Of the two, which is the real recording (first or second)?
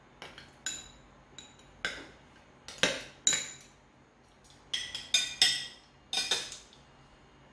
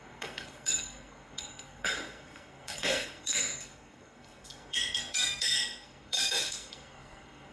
first